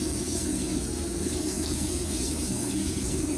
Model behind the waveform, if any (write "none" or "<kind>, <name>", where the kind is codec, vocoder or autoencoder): codec, SNAC